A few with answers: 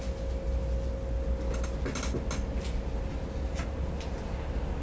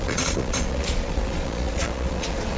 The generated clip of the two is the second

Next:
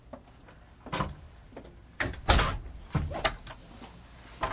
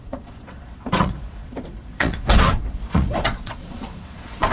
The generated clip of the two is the second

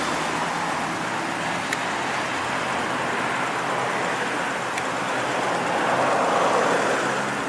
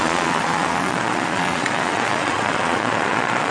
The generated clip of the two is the second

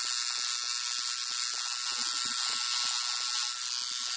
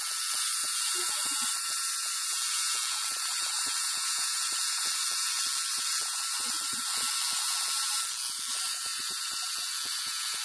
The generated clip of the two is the second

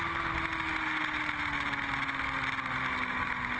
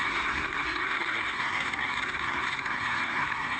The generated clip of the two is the second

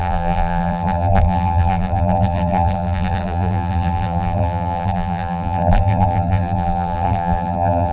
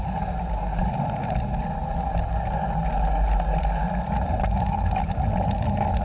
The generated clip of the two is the first